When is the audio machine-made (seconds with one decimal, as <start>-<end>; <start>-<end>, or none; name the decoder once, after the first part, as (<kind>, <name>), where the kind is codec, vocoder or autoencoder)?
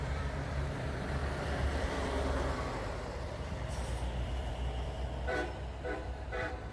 0.0-6.7 (vocoder, BigVGAN v2)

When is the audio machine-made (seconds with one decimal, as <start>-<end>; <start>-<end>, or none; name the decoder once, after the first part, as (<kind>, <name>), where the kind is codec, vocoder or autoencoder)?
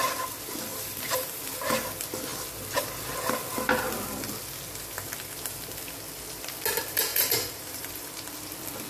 0.7-1.4 (vocoder, BigVGAN v2); 7.1-8.1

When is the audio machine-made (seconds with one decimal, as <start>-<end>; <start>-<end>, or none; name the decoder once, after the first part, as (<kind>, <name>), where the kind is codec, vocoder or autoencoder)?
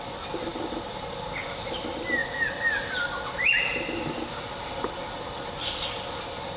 none